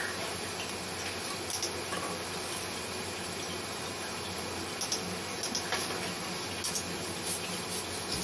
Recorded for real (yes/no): yes